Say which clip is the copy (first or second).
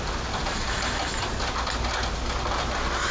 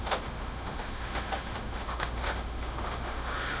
second